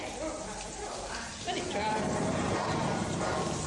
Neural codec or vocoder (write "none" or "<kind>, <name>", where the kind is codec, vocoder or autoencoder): vocoder, BigVGAN v2